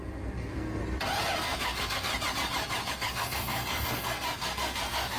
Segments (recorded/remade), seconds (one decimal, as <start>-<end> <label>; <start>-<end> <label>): 0.0-0.8 remade; 0.8-1.4 recorded; 1.4-2.1 remade; 2.1-2.9 recorded; 2.9-5.2 remade